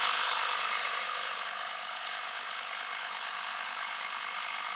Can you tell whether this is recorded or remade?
remade